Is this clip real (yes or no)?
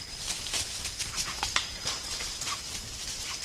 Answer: no